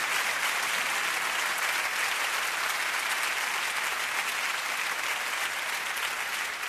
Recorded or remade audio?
recorded